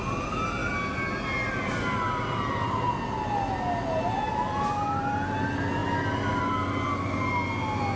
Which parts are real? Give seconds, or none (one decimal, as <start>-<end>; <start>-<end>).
0.0-8.0